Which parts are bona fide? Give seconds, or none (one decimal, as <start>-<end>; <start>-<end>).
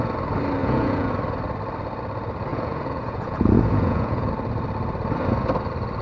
0.0-0.6; 1.1-2.5; 4.3-6.0